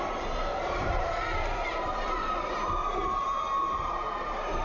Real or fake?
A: fake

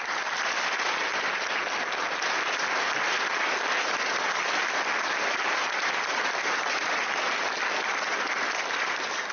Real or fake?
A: real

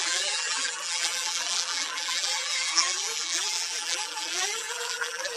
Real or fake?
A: fake